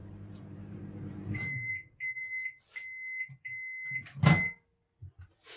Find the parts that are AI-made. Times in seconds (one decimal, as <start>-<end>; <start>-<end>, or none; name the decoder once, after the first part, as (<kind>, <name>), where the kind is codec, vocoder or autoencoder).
0.0-1.7 (vocoder, BigVGAN v2)